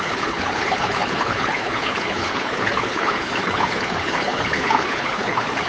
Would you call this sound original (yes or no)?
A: no